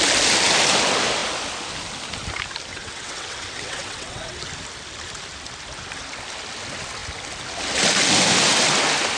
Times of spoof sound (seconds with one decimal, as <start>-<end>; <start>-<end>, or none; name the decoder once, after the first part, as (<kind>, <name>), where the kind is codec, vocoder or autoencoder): 2.7-4.4 (vocoder, WaveNeXt)